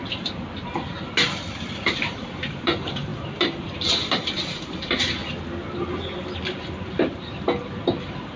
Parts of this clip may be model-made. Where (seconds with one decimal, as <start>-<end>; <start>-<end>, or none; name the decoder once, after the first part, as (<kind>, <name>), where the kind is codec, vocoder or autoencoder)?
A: 1.5-5.2 (vocoder, BigVGAN v2); 7.8-8.4